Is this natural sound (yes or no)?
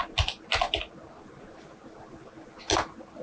yes